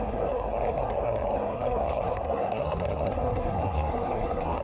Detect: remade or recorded remade